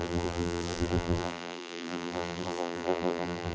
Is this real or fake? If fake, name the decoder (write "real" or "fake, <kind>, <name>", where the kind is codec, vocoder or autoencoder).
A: fake, vocoder, BigVGAN v2